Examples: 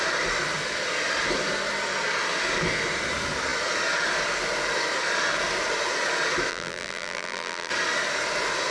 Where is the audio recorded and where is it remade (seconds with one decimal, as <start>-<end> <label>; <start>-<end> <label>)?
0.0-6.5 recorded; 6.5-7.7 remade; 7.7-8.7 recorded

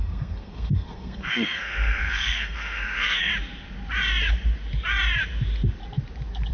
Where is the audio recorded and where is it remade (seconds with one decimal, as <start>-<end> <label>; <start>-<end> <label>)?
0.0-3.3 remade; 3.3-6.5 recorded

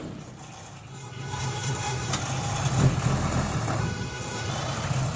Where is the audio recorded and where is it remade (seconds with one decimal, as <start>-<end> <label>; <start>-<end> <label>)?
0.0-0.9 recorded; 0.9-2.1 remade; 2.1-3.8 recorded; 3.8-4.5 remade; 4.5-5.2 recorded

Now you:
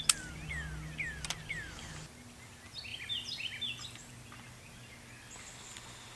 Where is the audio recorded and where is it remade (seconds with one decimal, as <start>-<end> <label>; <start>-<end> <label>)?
0.0-2.9 recorded; 2.9-4.1 remade; 4.1-6.2 recorded

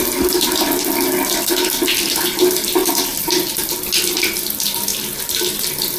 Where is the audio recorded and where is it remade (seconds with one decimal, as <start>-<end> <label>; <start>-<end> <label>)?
0.0-2.8 recorded; 2.8-3.5 remade; 3.5-6.0 recorded

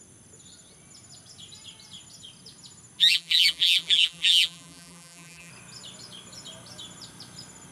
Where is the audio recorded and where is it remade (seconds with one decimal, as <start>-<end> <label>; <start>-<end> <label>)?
0.0-3.0 recorded; 3.0-5.5 remade; 5.5-7.7 recorded

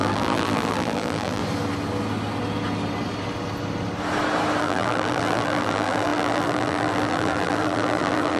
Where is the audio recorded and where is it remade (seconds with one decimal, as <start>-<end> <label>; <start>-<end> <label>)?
0.0-1.4 remade; 1.4-4.6 recorded; 4.6-8.4 remade